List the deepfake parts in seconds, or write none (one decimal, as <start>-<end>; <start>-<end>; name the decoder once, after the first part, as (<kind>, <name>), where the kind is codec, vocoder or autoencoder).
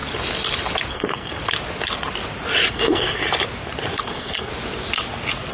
0.9-1.4 (codec, SNAC); 2.7-3.2; 4.0-4.5